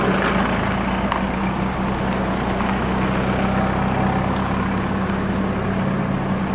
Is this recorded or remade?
recorded